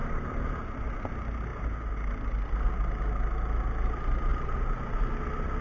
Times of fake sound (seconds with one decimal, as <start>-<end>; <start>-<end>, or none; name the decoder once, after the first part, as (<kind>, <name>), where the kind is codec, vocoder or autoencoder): 4.3-5.6 (vocoder, BigVGAN v2)

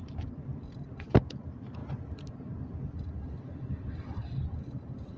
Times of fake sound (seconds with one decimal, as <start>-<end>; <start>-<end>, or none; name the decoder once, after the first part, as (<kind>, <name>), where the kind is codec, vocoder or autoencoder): none

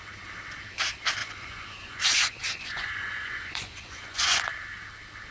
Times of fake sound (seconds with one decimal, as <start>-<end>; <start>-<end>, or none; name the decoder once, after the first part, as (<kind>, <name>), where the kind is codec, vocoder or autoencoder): 1.2-4.4 (vocoder, Vocos)

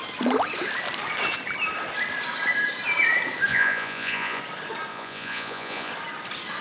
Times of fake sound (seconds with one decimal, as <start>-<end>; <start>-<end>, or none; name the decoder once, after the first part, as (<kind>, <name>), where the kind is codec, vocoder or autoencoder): 3.5-4.4 (vocoder, Vocos); 4.9-5.9